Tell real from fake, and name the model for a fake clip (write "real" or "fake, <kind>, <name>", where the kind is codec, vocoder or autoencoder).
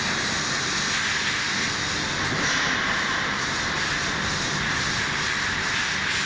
real